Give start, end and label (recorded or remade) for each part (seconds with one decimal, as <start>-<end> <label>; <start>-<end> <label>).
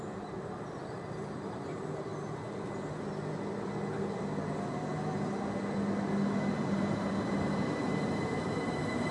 0.0-2.1 remade; 2.1-6.6 recorded; 6.6-9.1 remade